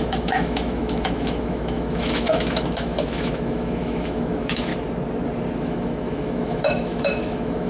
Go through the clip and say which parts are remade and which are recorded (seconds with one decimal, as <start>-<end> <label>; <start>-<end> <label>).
0.0-4.7 remade; 4.7-5.6 recorded; 5.6-7.7 remade